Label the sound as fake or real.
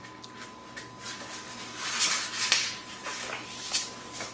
real